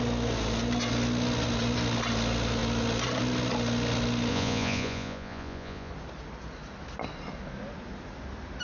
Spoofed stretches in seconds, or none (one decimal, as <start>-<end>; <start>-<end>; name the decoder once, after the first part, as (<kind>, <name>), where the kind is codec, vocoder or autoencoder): 4.3-5.9 (vocoder, Vocos)